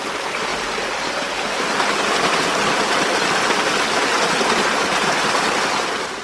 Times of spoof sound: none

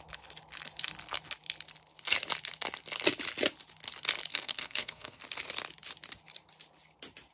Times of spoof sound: 4.3-5.2 (codec, SNAC)